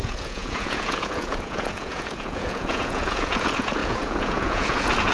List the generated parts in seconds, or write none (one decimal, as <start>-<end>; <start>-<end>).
0.0-5.1